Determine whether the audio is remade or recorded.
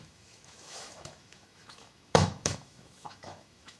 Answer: remade